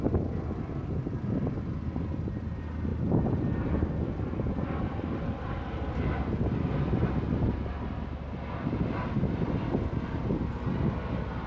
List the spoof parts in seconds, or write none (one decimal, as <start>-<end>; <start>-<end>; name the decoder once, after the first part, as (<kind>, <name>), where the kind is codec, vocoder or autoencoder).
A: none